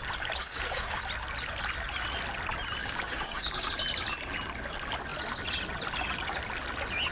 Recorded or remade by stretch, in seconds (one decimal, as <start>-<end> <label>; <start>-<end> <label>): 0.0-0.4 recorded; 0.4-1.0 remade; 1.0-2.8 recorded; 2.8-3.7 remade; 3.7-7.1 recorded